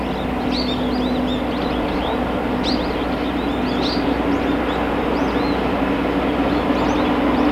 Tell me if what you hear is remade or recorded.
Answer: recorded